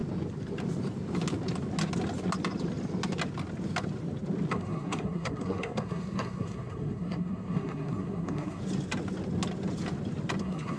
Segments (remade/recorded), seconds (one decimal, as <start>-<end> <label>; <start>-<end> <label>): 0.0-4.5 recorded; 4.5-8.6 remade; 8.6-10.4 recorded; 10.4-10.8 remade